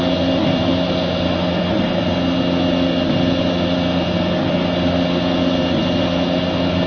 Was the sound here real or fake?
real